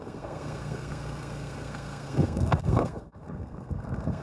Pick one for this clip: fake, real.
fake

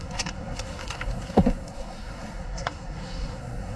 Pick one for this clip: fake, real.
fake